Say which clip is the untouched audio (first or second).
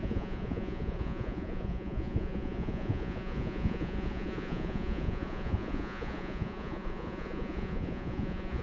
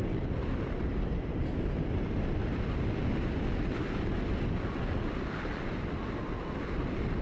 second